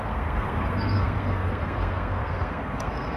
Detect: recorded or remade remade